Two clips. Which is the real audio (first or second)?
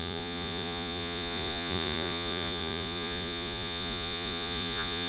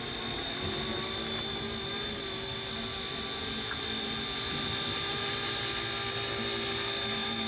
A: second